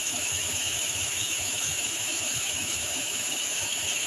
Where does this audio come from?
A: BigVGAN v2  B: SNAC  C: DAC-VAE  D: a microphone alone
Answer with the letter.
C